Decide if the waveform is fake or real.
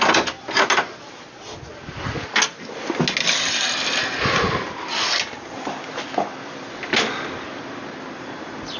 real